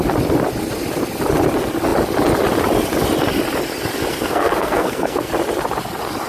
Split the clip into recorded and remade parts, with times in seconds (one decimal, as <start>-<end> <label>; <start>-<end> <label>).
0.0-4.1 recorded; 4.1-5.3 remade; 5.3-6.3 recorded